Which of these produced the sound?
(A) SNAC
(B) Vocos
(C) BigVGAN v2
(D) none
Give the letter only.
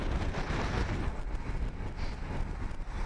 D